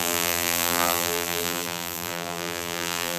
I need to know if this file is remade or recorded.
remade